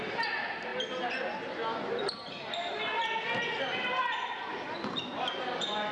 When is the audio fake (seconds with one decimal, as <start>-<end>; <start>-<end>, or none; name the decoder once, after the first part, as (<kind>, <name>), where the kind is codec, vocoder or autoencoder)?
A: none